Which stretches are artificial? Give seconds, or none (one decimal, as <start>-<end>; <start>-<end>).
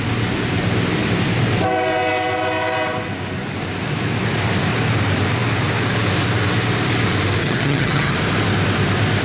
7.4-8.1